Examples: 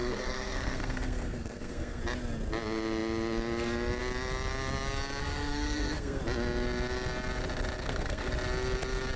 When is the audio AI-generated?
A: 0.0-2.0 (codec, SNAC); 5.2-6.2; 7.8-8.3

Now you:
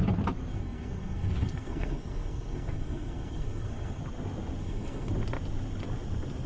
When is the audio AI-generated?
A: 0.5-4.0 (codec, SNAC); 4.6-5.1

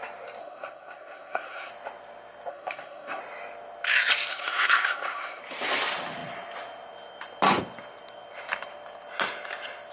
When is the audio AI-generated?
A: 0.4-1.7 (codec, SNAC); 2.5-3.2; 4.3-5.4

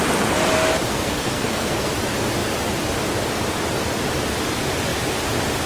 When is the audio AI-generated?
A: 0.9-1.9 (codec, SNAC)

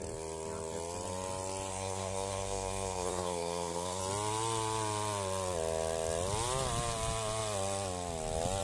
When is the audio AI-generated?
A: 1.7-4.0 (codec, SNAC)

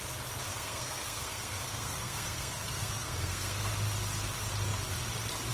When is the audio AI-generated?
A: 0.5-3.7 (codec, SNAC)

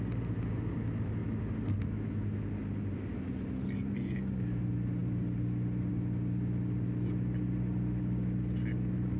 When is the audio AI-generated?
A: none